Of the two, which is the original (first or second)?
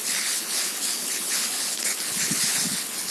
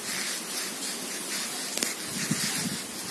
second